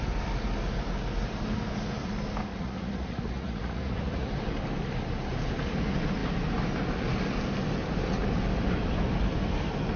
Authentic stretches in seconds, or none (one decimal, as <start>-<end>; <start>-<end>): 0.0-2.5; 4.3-10.0